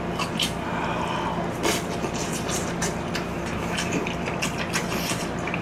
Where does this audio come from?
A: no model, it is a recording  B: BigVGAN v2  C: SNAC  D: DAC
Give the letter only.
A